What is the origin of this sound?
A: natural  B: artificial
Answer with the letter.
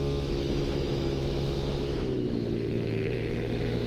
B